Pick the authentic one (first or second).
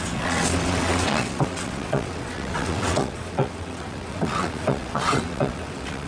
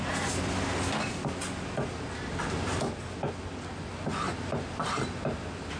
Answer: second